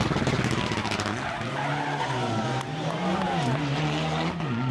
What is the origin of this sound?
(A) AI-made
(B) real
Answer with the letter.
B